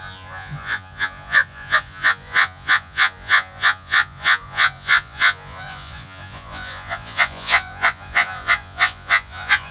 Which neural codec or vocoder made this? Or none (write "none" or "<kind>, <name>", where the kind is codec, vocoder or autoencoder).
vocoder, Vocos